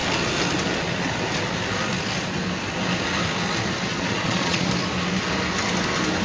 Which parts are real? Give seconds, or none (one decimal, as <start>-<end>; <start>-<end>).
0.0-3.9; 4.7-6.2